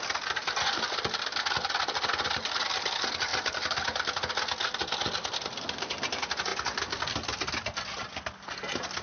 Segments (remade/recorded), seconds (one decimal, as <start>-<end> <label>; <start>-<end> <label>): 0.0-9.0 recorded